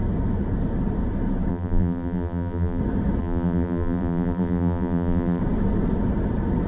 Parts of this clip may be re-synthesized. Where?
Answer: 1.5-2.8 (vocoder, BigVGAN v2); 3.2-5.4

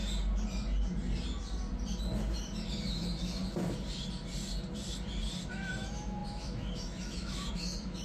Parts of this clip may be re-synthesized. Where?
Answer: 2.9-3.4 (autoencoder, DAC-VAE); 5.5-8.0

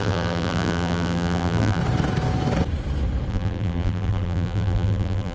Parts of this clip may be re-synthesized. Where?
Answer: 0.0-1.8 (vocoder, BigVGAN v2); 3.3-5.3

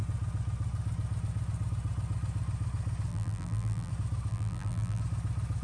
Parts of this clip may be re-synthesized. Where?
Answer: 3.1-3.9 (vocoder, BigVGAN v2); 4.3-5.0